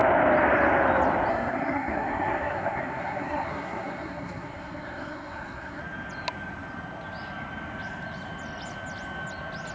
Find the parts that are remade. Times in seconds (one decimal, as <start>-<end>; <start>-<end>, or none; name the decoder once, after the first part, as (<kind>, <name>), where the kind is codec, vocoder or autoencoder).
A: 1.3-5.8 (codec, SNAC)